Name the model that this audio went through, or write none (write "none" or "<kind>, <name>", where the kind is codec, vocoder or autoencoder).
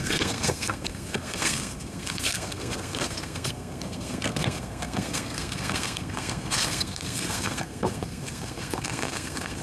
codec, SNAC